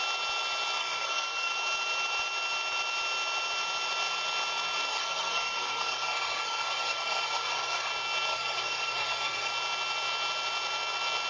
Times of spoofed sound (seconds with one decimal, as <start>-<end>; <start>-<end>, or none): 0.8-1.5; 4.9-7.9; 8.3-9.5